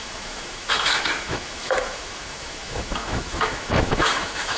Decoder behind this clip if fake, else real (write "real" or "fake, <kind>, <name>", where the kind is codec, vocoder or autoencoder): fake, autoencoder, DAC-VAE